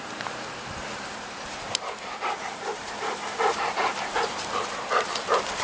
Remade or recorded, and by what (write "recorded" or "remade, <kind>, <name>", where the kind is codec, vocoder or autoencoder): remade, vocoder, BigVGAN v2